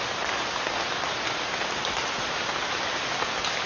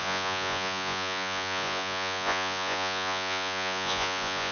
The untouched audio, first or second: first